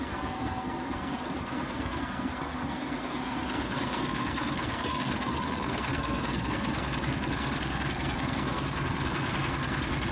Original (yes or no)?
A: no